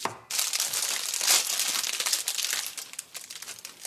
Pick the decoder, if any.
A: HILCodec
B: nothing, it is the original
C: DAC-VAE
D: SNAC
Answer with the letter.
B